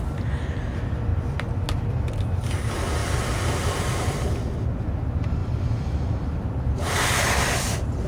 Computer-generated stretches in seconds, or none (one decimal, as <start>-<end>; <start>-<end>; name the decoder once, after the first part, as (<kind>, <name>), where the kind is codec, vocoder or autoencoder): 3.0-4.4 (vocoder, BigVGAN v2); 5.4-8.1